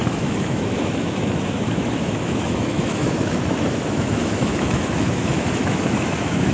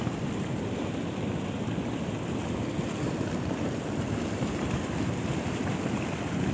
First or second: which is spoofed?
first